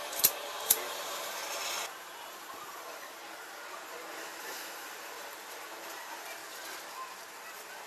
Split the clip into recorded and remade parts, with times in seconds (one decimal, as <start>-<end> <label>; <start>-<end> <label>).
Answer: 0.0-1.4 remade; 1.4-1.9 recorded; 1.9-3.2 remade; 3.2-4.4 recorded; 4.4-6.4 remade; 6.4-7.9 recorded